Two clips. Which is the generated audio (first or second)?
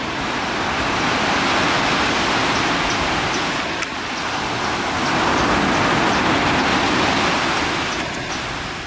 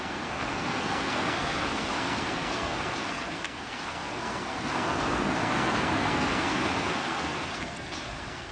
second